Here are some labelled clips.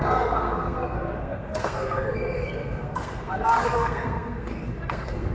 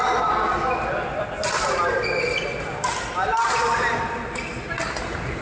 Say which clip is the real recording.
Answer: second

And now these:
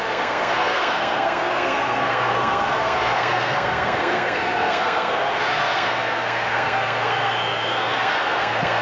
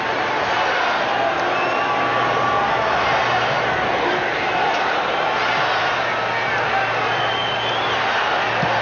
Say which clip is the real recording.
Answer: second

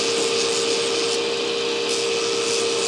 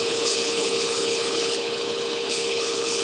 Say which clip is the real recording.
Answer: first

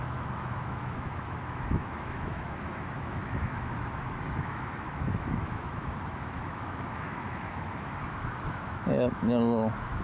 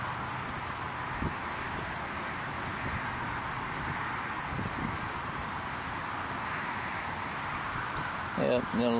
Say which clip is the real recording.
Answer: second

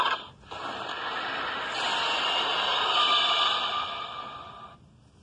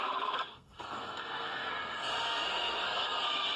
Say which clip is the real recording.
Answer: first